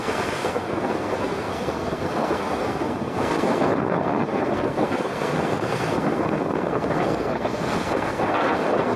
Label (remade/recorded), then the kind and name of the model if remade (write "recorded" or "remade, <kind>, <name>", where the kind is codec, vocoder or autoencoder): remade, codec, SNAC